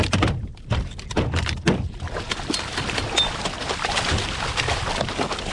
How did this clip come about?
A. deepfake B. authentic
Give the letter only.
A